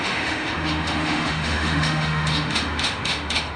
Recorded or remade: remade